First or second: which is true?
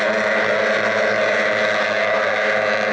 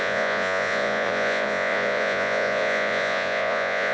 first